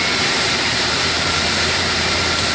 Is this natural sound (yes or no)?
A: no